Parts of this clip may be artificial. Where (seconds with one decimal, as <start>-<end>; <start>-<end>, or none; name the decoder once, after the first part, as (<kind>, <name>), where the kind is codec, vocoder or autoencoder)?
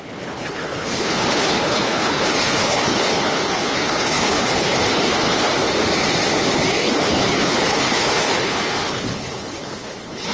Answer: 0.0-5.5 (codec, HILCodec); 6.5-10.3